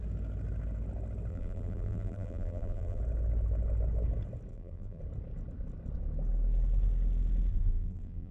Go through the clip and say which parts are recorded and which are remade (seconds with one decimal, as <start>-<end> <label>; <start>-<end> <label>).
0.0-1.3 recorded; 1.3-3.0 remade; 3.0-4.5 recorded; 4.5-5.0 remade; 5.0-7.5 recorded; 7.5-8.3 remade

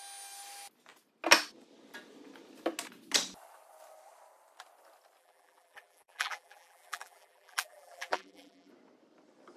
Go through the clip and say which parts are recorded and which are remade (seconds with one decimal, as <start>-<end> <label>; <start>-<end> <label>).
0.0-5.2 recorded; 5.2-8.7 remade; 8.7-9.6 recorded

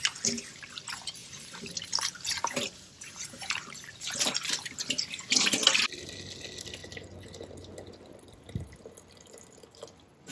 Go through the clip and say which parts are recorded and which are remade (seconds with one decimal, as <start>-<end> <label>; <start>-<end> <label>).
0.0-1.2 recorded; 1.2-4.6 remade; 4.6-10.3 recorded

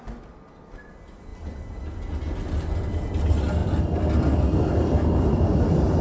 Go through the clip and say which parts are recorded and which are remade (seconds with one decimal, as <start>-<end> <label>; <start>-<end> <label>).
0.0-6.0 recorded